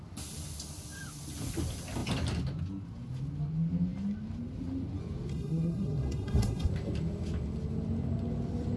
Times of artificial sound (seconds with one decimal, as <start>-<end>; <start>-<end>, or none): 5.3-6.7